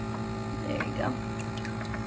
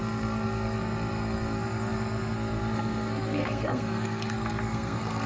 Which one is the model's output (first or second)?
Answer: second